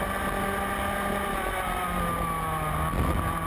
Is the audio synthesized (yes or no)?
no